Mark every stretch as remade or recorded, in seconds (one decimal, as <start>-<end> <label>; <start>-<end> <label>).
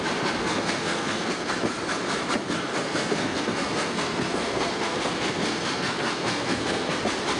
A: 0.0-0.4 recorded; 0.4-1.5 remade; 1.5-2.7 recorded; 2.7-7.0 remade; 7.0-7.4 recorded